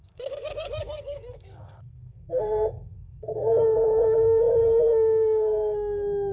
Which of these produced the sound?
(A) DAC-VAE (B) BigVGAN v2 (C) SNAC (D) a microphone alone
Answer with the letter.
C